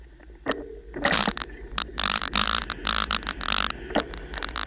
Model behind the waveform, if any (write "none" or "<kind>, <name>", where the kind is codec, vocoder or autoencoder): none